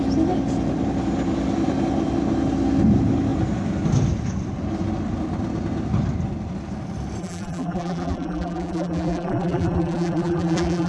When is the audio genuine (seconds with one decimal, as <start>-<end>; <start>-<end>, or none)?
0.0-7.2

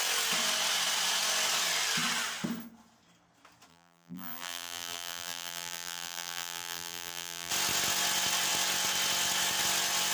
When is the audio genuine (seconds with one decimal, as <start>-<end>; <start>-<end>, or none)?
0.0-3.7; 7.5-10.1

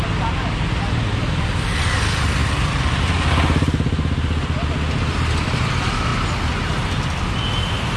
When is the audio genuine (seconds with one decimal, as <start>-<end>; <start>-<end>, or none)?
0.0-8.0

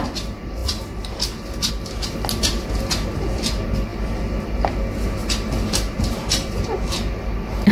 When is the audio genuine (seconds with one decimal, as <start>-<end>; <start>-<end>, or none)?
0.0-7.7

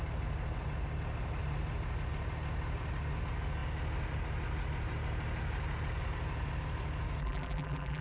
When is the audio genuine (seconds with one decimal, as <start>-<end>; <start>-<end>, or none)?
0.0-7.2

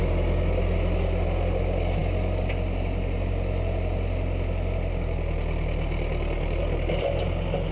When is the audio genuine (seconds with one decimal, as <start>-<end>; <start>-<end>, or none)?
0.0-7.7

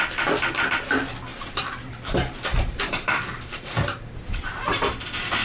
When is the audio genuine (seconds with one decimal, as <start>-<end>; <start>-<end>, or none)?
0.0-1.3; 4.5-5.4